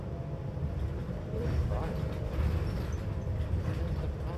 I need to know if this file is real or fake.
real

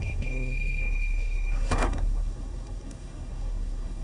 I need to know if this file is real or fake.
fake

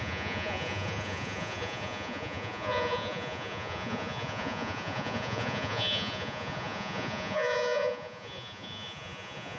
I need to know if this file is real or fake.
fake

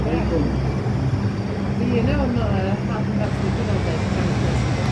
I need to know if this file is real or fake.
real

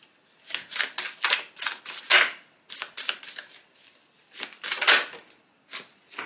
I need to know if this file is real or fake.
real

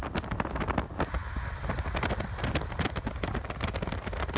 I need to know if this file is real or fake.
real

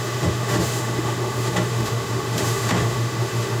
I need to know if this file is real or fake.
fake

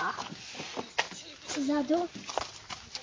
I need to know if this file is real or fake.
real